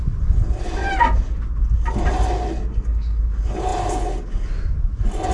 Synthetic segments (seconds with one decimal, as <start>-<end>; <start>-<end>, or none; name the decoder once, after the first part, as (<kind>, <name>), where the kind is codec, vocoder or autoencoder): 2.7-3.2 (codec, SNAC)